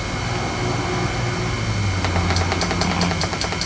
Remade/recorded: recorded